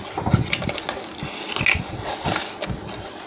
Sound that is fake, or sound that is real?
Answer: real